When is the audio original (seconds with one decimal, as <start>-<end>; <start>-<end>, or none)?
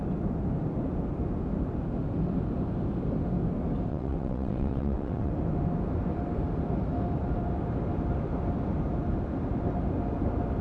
0.0-3.9; 5.3-10.6